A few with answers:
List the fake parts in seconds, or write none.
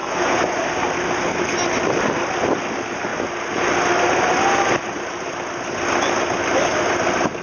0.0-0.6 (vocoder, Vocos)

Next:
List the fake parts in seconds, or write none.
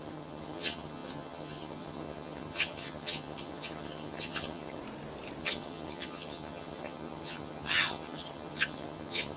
0.0-4.8 (vocoder, HiFi-GAN); 5.4-9.4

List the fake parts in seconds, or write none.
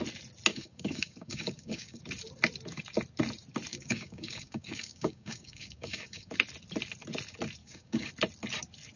0.5-2.0 (codec, DAC); 3.7-6.3; 7.6-8.1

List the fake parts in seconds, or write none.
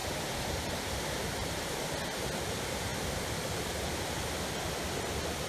none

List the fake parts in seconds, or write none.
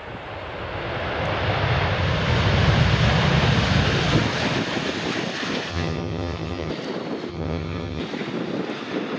5.7-6.7 (vocoder, HiFi-GAN); 7.3-8.0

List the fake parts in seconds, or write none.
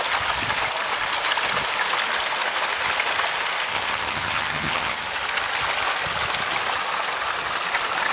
3.7-5.1 (vocoder, HiFi-GAN)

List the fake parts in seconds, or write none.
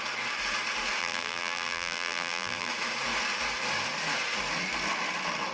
1.0-2.7 (vocoder, BigVGAN v2)